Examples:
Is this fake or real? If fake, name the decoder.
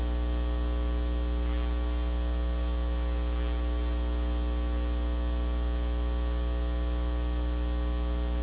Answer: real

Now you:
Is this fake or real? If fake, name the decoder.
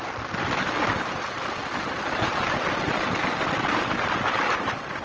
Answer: real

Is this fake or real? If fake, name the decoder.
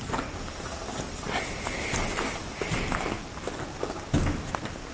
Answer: real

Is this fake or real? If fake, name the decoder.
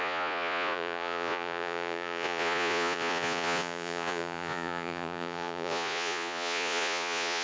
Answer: fake, vocoder, Vocos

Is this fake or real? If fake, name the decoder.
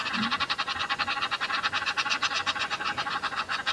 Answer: fake, vocoder, Vocos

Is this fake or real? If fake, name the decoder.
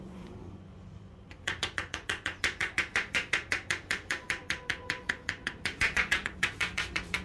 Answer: fake, vocoder, Vocos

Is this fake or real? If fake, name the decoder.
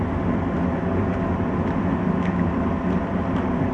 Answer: real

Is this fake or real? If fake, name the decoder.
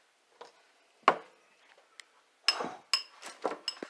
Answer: real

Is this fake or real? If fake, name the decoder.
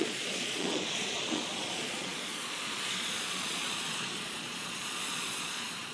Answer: fake, vocoder, Vocos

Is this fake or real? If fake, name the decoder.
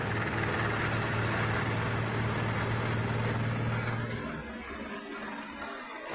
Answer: real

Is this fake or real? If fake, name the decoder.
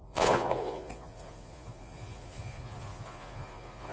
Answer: fake, vocoder, Vocos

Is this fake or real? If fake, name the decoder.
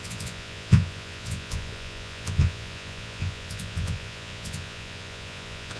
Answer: fake, vocoder, Vocos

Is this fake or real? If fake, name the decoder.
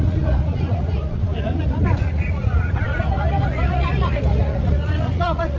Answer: fake, vocoder, Vocos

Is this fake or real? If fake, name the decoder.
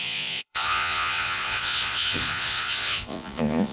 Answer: fake, vocoder, Vocos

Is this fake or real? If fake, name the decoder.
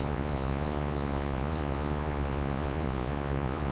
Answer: fake, vocoder, Vocos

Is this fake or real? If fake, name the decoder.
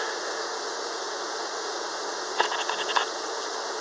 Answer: fake, vocoder, Vocos